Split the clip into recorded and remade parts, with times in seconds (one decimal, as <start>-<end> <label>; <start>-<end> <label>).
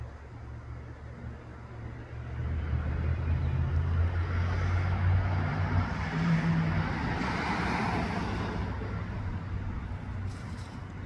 0.0-2.4 recorded; 2.4-3.4 remade; 3.4-5.5 recorded; 5.5-6.5 remade; 6.5-11.1 recorded